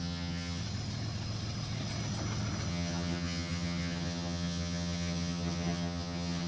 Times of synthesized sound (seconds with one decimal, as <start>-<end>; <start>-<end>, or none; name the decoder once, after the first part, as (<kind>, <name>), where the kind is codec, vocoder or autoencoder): 0.0-0.6 (vocoder, HiFi-GAN); 2.7-6.5